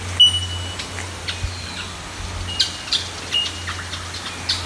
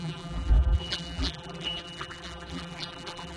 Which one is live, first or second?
first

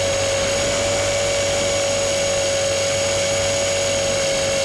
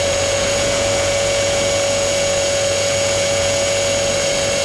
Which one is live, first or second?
first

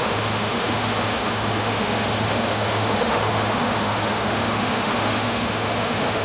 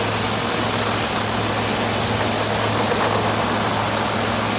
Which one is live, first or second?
second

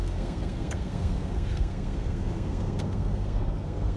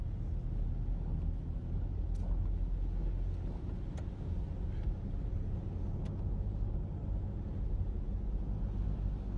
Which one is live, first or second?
second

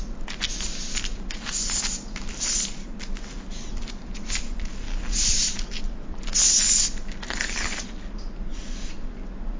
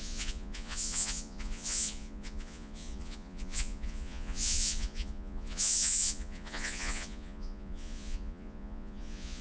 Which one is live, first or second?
first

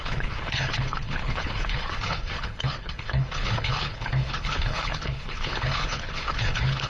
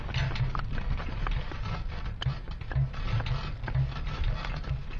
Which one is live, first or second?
second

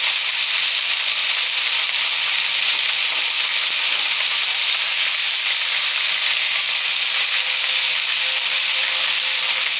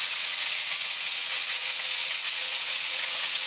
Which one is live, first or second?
first